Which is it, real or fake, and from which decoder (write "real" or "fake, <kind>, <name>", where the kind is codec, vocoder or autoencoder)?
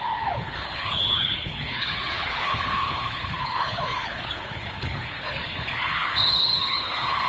fake, codec, HILCodec